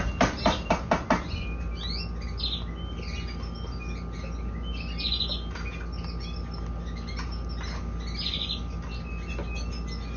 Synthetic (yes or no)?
no